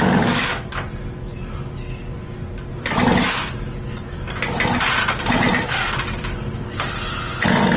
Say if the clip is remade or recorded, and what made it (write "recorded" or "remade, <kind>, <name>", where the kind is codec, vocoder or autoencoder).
recorded